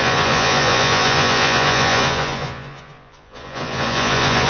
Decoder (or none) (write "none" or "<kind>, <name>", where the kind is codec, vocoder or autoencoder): vocoder, Vocos